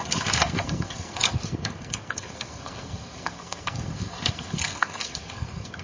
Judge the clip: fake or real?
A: fake